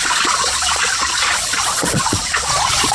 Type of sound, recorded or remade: remade